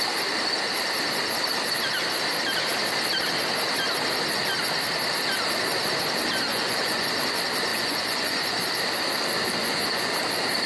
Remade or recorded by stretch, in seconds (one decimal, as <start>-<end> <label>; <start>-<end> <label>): 0.0-6.5 recorded; 6.5-7.1 remade; 7.1-7.7 recorded; 7.7-8.7 remade; 8.7-9.6 recorded; 9.6-10.1 remade; 10.1-10.7 recorded